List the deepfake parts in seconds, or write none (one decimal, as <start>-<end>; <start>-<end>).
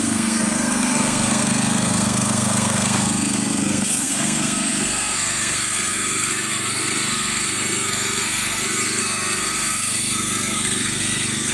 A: 0.0-11.5